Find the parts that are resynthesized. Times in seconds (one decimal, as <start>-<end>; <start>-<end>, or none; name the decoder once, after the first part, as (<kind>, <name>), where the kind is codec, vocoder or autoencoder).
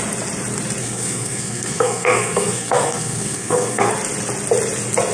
0.8-3.9 (codec, SNAC)